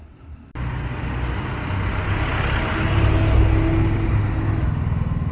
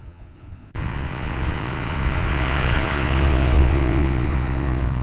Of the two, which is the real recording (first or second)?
first